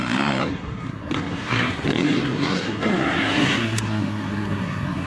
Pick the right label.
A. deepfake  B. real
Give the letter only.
A